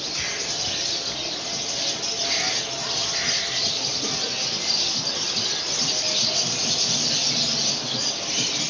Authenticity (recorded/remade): recorded